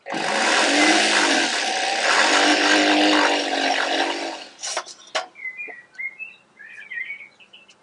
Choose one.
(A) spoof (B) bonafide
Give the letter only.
B